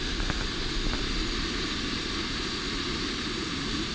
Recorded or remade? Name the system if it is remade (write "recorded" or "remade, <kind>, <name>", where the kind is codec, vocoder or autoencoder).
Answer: recorded